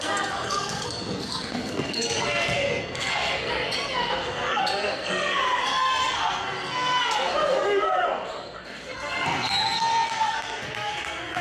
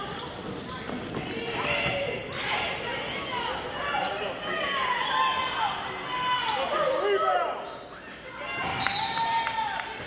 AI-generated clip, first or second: first